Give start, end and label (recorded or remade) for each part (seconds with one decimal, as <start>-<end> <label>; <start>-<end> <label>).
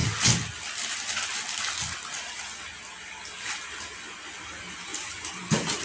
0.0-4.9 recorded; 4.9-5.8 remade